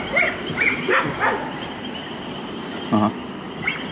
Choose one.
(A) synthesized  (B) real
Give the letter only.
B